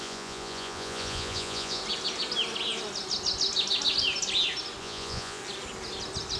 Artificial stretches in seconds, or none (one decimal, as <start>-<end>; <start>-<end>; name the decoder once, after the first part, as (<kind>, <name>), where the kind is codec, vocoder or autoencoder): 0.0-1.8 (vocoder, Vocos); 4.8-5.4